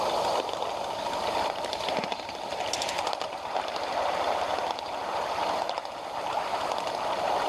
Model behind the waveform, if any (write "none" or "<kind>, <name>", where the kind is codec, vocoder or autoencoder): none